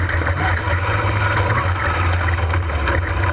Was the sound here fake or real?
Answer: real